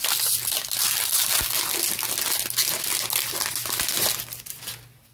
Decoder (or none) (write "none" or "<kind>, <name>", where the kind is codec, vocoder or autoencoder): none